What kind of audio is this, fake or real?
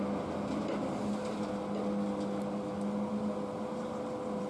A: real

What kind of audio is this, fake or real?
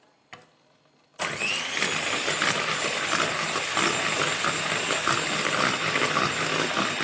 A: real